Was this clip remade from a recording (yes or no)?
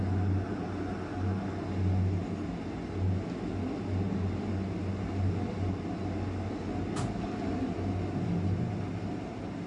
no